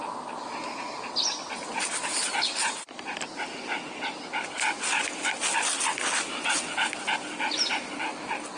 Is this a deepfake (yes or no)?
no